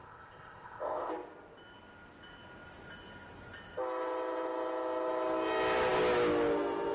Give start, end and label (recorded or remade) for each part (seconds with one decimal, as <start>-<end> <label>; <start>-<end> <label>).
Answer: 0.0-1.1 remade; 1.1-6.9 recorded